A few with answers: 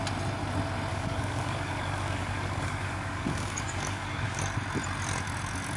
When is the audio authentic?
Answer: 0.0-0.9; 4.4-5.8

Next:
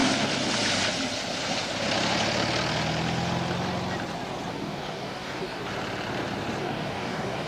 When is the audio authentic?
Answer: 0.0-4.5; 5.6-6.6

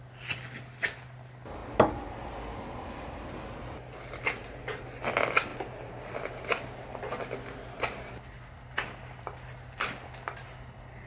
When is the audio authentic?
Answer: 0.0-11.1

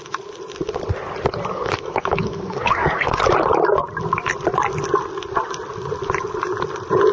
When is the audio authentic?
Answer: 0.0-1.5; 3.2-7.1